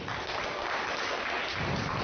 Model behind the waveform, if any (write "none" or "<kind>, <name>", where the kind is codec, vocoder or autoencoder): none